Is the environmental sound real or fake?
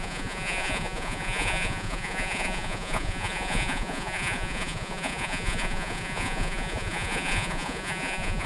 fake